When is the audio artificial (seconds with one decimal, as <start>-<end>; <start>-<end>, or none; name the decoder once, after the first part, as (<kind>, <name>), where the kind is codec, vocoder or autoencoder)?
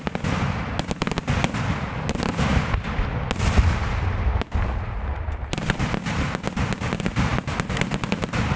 none